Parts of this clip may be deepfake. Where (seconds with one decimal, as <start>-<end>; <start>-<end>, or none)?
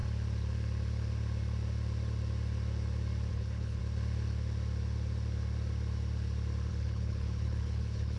3.3-3.8; 6.7-8.2